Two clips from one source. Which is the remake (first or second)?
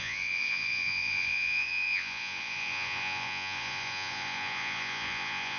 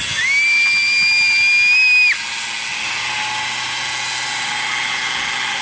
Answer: first